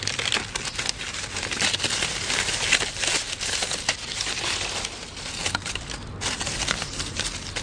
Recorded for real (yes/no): yes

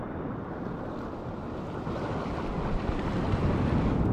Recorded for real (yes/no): yes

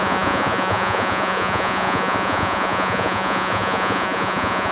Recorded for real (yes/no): no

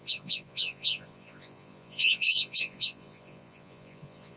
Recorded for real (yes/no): no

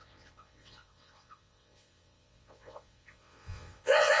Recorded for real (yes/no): no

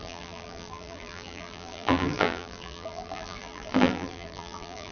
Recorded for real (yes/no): no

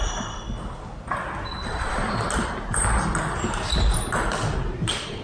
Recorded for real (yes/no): yes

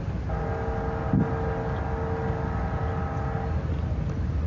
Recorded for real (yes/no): yes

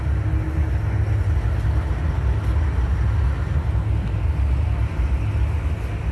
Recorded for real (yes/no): yes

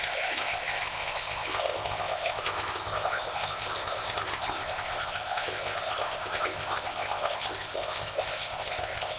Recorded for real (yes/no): no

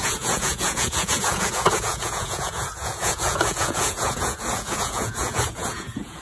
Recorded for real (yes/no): no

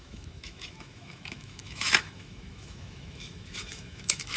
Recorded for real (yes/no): no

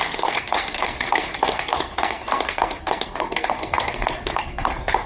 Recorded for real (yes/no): no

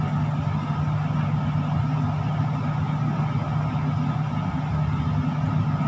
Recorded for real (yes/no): yes